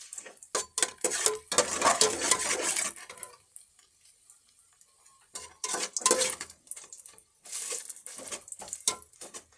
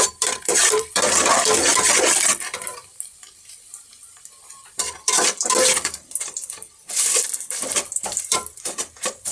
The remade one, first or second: second